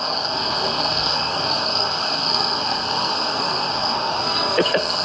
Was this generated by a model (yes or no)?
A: yes